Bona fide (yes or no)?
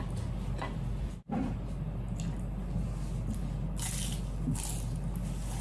yes